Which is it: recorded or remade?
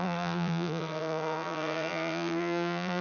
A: remade